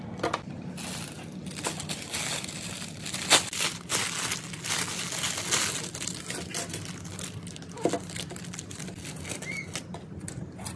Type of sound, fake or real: real